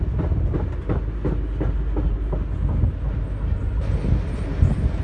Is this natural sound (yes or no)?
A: yes